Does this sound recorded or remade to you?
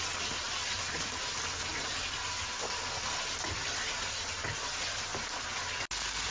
recorded